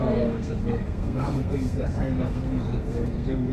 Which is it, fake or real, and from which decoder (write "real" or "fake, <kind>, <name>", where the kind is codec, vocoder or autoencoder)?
fake, codec, SNAC